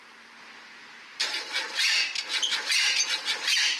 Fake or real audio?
fake